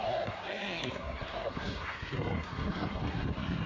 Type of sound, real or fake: fake